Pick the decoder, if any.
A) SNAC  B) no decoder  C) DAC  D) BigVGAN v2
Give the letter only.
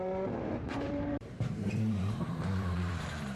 D